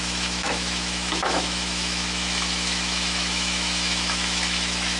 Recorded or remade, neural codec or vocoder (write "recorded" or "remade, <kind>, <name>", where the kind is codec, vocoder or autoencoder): remade, autoencoder, DAC-VAE